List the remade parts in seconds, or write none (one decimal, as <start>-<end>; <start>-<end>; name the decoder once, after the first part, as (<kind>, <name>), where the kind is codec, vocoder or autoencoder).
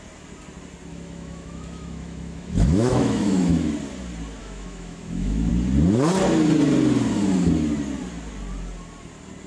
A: 0.9-3.7 (autoencoder, DAC-VAE); 4.4-5.5